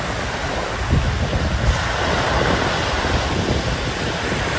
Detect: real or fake real